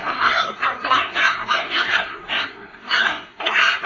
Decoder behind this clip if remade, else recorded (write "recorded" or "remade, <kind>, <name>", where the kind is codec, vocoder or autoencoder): remade, codec, SNAC